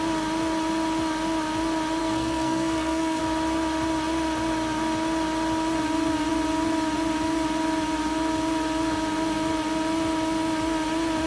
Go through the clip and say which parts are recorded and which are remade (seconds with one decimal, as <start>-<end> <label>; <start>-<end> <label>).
0.0-2.0 recorded; 2.0-3.2 remade; 3.2-11.3 recorded